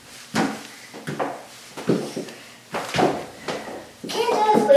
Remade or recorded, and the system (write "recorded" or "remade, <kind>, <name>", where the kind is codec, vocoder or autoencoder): recorded